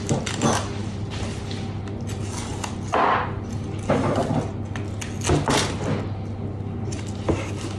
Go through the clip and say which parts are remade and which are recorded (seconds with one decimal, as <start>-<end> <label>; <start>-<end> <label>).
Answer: 0.0-7.8 recorded